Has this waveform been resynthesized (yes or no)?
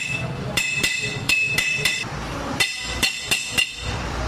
yes